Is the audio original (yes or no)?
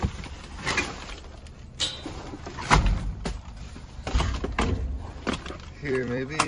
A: no